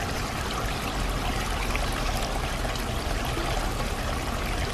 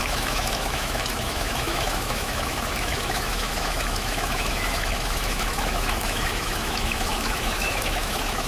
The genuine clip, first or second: first